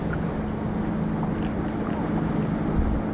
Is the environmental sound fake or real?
real